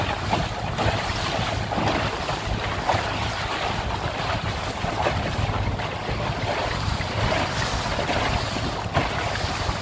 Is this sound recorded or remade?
recorded